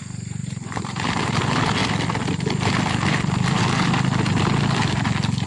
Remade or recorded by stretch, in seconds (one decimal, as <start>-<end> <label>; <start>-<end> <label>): 0.0-0.4 recorded; 0.4-1.4 remade; 1.4-5.5 recorded